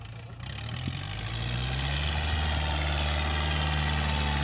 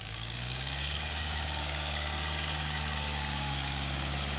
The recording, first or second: first